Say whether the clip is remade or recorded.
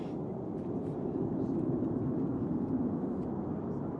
recorded